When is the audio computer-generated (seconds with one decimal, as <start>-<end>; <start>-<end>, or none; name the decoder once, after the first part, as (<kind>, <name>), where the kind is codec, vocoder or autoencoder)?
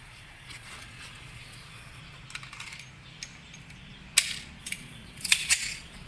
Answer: 0.0-2.0 (vocoder, Vocos); 4.6-6.1